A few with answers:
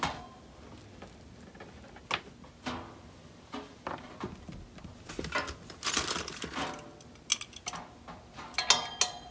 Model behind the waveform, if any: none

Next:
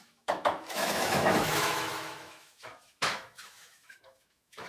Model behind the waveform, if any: autoencoder, DAC-VAE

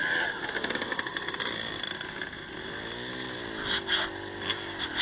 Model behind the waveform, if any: none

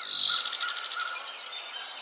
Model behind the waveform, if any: none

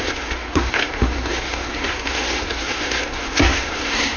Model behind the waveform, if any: codec, SNAC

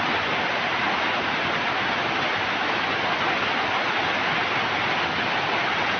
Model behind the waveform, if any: none